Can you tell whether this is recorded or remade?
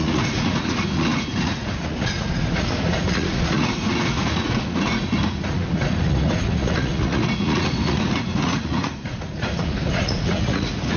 remade